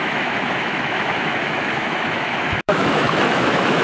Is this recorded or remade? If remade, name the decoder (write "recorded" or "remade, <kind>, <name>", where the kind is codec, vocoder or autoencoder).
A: remade, autoencoder, DAC-VAE